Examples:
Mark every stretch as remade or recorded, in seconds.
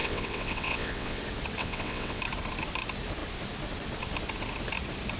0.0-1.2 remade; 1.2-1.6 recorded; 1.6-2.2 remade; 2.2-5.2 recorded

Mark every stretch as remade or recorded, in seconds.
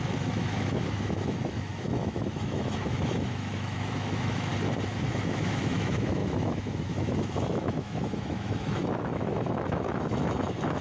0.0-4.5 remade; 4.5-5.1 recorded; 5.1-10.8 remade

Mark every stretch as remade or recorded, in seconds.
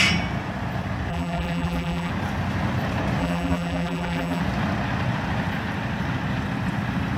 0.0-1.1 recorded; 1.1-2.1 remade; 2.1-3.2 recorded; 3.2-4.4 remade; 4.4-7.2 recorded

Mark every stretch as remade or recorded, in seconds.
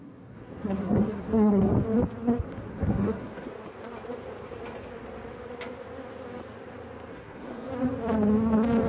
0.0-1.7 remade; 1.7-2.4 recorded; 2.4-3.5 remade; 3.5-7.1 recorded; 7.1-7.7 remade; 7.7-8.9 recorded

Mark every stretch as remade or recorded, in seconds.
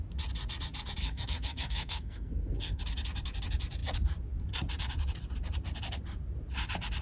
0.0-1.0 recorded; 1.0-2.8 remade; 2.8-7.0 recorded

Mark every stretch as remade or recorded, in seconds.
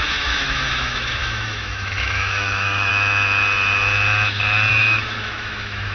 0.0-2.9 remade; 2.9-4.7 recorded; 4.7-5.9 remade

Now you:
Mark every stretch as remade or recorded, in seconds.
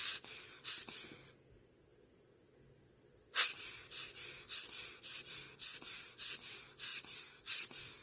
0.0-0.9 remade; 0.9-6.9 recorded; 6.9-7.4 remade; 7.4-8.0 recorded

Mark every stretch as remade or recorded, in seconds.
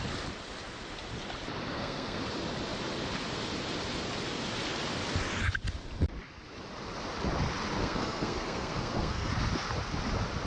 0.0-1.7 recorded; 1.7-2.2 remade; 2.2-7.8 recorded; 7.8-9.3 remade; 9.3-10.5 recorded